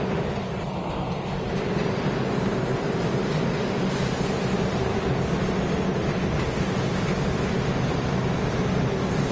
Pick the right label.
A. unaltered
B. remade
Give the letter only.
A